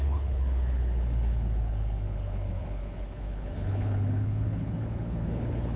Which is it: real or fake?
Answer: fake